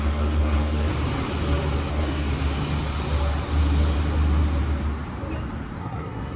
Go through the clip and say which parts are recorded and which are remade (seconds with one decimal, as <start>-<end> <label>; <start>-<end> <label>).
0.0-0.9 remade; 0.9-1.9 recorded; 1.9-2.3 remade; 2.3-5.8 recorded; 5.8-6.4 remade